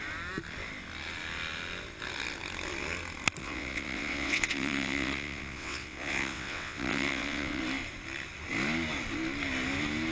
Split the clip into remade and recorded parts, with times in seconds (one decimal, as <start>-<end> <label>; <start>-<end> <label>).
0.0-3.4 recorded; 3.4-7.6 remade; 7.6-10.1 recorded